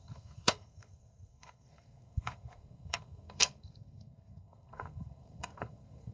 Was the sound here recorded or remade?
remade